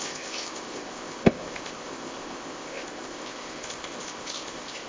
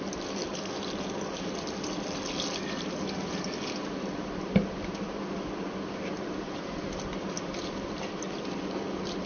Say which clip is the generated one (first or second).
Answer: first